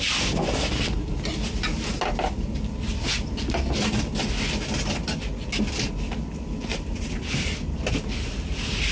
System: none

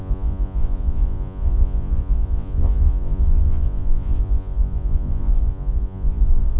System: vocoder, Vocos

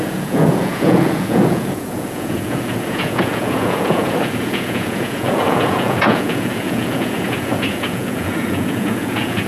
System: vocoder, Vocos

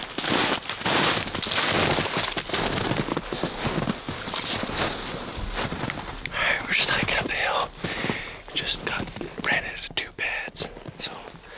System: none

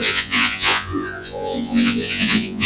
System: vocoder, Vocos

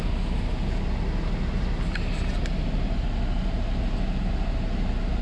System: none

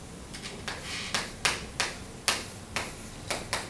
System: none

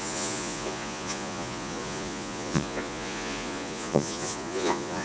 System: vocoder, Vocos